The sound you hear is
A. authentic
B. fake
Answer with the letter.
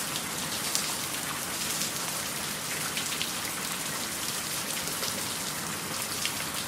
A